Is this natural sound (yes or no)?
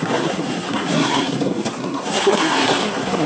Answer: no